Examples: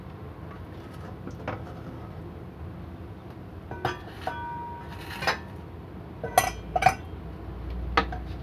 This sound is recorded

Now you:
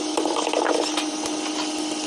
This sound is recorded